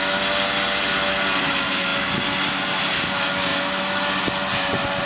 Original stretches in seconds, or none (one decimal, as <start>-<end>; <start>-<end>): 0.0-5.0